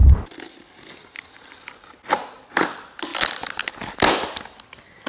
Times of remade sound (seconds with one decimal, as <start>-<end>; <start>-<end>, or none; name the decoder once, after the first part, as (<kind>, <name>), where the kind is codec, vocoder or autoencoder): none